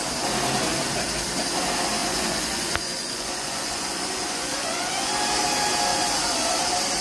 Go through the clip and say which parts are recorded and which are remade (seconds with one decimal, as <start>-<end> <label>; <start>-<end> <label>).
0.0-2.0 recorded; 2.0-5.1 remade; 5.1-5.9 recorded; 5.9-6.5 remade; 6.5-7.0 recorded